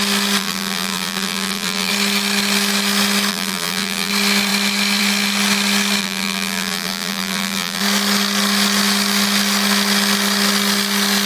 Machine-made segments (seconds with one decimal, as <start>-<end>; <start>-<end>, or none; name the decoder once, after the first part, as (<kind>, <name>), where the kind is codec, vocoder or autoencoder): 0.4-1.9 (vocoder, BigVGAN v2); 3.3-4.1; 6.0-7.8